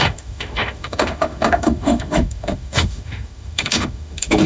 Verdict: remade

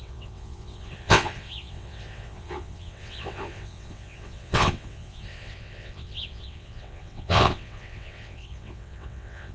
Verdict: remade